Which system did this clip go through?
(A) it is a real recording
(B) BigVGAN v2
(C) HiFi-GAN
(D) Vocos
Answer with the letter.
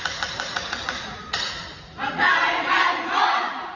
D